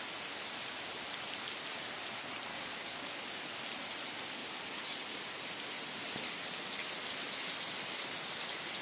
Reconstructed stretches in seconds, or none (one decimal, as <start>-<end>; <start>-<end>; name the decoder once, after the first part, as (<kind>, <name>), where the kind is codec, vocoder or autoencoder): 2.5-3.5 (codec, DAC)